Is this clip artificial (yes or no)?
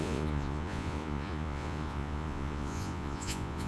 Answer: yes